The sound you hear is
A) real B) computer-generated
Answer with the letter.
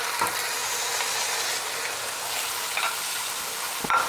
A